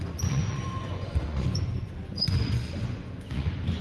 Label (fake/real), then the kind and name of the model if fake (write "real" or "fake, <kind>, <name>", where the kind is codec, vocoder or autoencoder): fake, vocoder, Vocos